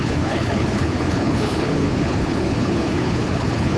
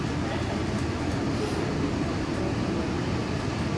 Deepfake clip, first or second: first